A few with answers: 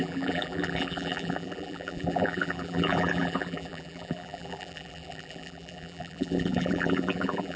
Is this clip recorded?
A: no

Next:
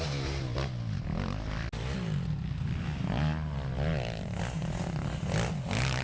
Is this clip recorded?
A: yes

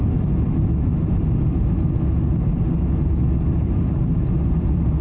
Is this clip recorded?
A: yes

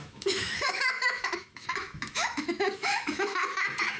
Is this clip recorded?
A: no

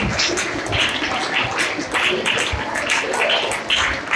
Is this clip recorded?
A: yes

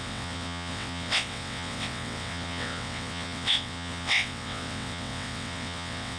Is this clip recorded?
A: no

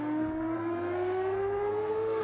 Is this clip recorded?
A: no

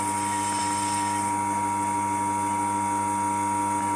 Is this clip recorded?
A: yes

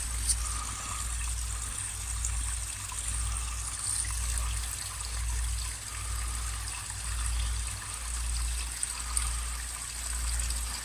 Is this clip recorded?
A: yes